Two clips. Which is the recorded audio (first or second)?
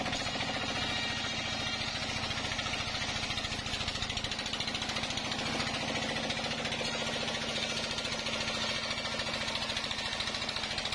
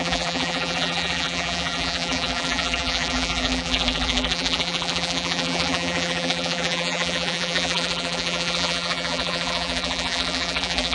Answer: first